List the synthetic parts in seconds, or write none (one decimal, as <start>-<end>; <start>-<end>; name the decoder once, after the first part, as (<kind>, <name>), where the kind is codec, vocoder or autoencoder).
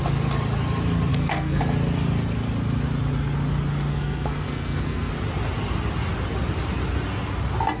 1.1-1.6 (codec, SNAC); 3.9-5.1